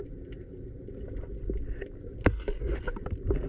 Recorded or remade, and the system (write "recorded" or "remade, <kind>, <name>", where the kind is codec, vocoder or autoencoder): recorded